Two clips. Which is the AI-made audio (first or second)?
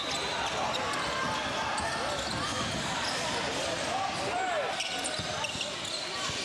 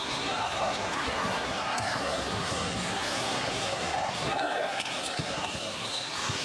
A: second